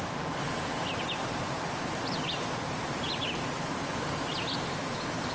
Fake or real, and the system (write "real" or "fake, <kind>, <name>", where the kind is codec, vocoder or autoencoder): real